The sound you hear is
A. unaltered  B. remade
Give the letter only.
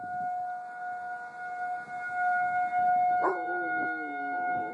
A